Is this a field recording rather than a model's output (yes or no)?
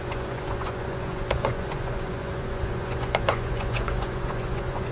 no